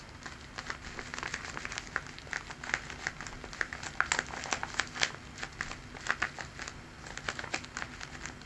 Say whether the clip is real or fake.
real